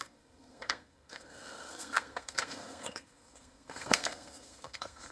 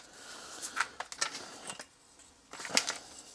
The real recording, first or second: second